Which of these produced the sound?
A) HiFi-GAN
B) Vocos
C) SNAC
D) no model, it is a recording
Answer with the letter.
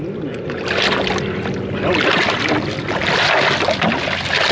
D